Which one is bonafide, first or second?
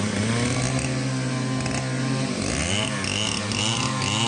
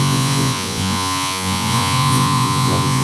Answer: first